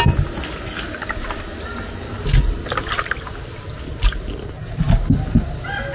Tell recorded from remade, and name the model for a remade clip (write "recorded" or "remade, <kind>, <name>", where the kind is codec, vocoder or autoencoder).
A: recorded